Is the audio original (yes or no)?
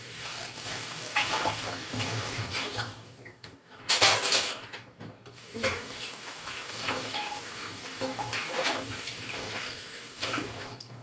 no